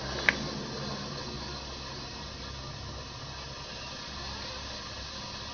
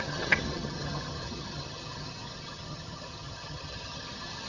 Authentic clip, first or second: first